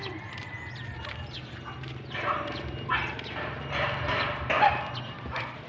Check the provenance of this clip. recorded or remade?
recorded